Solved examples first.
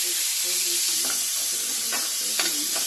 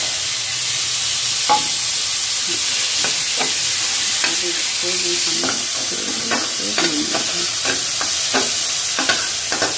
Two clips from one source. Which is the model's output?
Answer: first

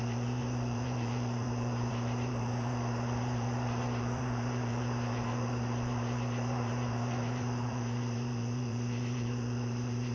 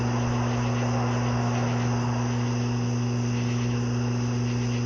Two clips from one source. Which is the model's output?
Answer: first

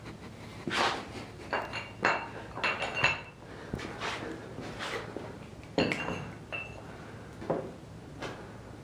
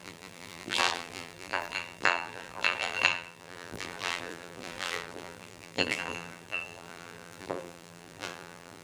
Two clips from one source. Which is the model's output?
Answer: second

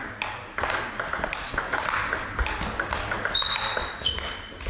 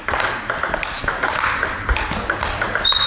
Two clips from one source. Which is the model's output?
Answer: second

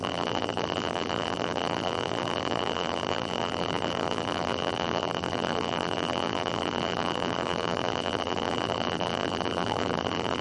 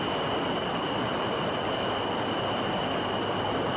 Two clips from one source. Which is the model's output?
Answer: first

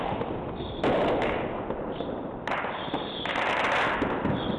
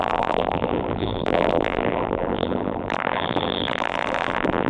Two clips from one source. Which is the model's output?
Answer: second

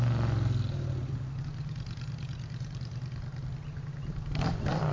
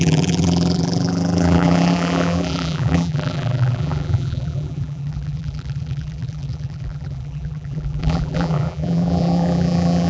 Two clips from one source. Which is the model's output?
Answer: second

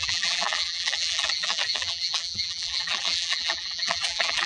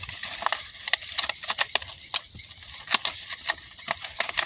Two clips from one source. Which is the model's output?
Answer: first